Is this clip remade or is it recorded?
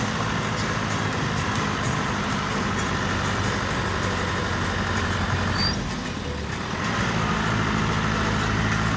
recorded